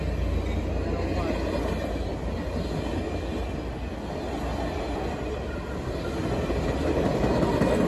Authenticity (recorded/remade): recorded